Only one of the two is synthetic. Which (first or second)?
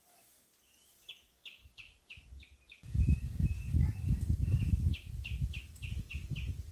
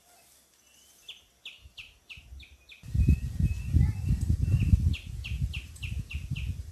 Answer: first